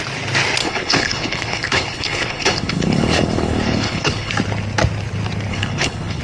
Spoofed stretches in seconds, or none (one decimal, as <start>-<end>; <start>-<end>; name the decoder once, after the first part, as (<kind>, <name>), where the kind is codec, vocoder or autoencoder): 0.6-4.3 (codec, HILCodec); 5.5-6.2